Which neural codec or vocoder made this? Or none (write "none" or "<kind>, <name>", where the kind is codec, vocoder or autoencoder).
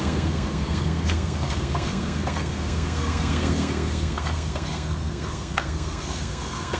codec, SNAC